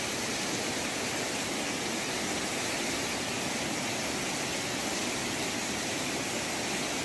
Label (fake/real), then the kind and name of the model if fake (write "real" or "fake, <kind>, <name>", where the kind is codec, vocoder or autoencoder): real